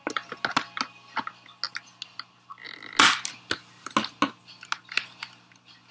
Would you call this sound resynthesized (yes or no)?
no